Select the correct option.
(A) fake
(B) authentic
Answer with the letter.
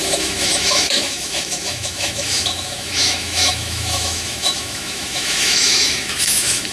A